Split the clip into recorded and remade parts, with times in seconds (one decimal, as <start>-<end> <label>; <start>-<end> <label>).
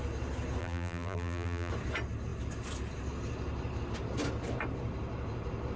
0.0-0.6 recorded; 0.6-1.7 remade; 1.7-5.8 recorded